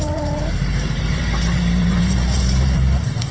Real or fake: fake